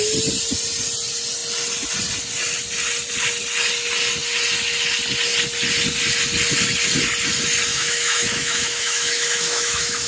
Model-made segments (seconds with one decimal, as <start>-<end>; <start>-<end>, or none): 7.7-10.1

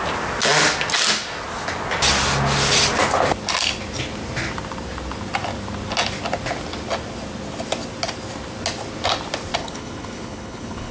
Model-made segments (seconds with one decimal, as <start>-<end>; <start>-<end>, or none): 9.6-10.9

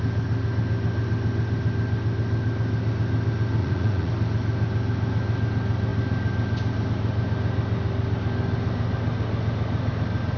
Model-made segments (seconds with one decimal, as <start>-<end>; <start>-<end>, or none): 3.6-4.1